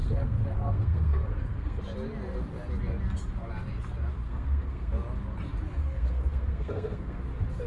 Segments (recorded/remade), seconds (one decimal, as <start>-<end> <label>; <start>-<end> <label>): 0.0-1.8 remade; 1.8-4.2 recorded; 4.2-4.9 remade; 4.9-5.8 recorded; 5.8-7.2 remade; 7.2-7.7 recorded

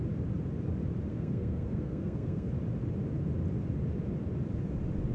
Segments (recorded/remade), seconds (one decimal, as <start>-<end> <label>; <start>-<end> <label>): 0.0-1.1 recorded; 1.1-2.5 remade; 2.5-5.1 recorded

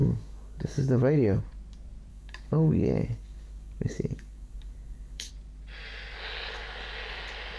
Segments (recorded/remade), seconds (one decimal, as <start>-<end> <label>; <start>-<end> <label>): 0.0-1.4 remade; 1.4-2.1 recorded; 2.1-5.3 remade; 5.3-7.6 recorded

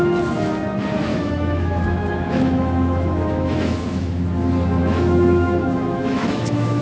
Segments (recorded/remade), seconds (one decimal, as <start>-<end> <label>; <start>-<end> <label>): 0.0-1.1 recorded; 1.1-4.2 remade; 4.2-4.8 recorded; 4.8-6.8 remade

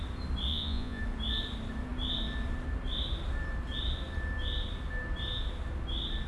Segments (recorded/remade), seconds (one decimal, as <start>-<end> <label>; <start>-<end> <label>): 0.0-0.5 recorded; 0.5-1.0 remade; 1.0-6.3 recorded

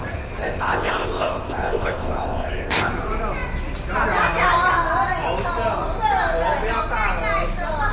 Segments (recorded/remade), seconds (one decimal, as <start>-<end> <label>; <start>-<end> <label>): 0.0-0.4 recorded; 0.4-2.9 remade; 2.9-7.9 recorded

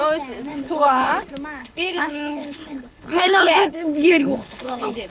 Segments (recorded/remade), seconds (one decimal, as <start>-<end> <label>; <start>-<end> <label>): 0.0-0.5 recorded; 0.5-1.1 remade; 1.1-1.6 recorded; 1.6-5.1 remade

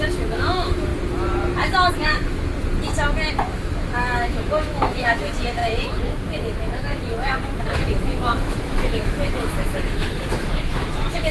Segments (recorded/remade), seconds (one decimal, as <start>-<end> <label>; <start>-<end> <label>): 0.0-0.9 remade; 0.9-1.9 recorded; 1.9-2.5 remade; 2.5-3.3 recorded; 3.3-11.3 remade